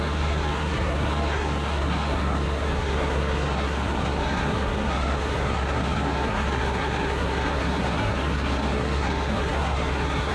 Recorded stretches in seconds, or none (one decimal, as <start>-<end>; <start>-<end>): none

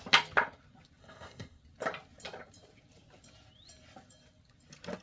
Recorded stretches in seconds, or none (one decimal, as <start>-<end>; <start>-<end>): 0.0-1.0; 1.6-5.0

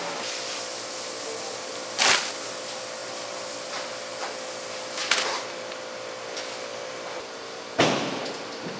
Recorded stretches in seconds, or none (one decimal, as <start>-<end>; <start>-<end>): 0.0-8.8

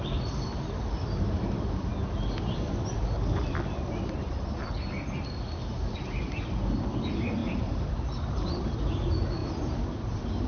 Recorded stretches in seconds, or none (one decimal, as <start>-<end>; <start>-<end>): 0.0-7.4; 8.7-10.5

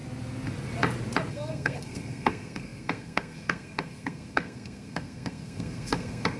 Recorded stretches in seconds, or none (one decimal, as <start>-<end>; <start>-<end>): 0.0-1.3